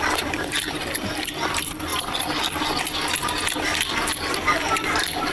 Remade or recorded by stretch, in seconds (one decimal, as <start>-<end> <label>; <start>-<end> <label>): 0.0-5.3 remade